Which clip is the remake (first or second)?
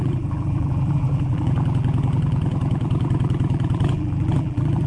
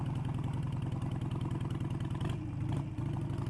first